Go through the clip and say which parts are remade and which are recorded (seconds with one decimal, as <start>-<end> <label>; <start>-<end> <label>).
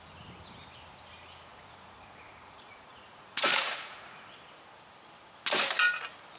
0.0-1.5 recorded; 1.5-4.3 remade; 4.3-6.4 recorded